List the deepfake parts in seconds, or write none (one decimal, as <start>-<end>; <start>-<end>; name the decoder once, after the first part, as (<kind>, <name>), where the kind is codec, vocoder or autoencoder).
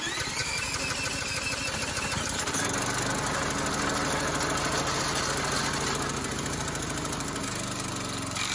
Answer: 6.2-7.9 (vocoder, BigVGAN v2)